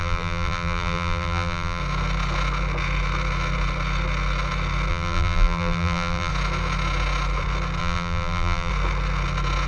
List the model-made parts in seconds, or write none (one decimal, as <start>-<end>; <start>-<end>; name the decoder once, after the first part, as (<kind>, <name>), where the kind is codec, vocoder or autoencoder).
0.0-1.8 (vocoder, BigVGAN v2); 4.9-6.3; 7.8-8.7